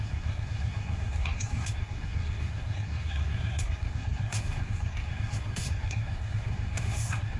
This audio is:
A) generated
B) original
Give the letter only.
A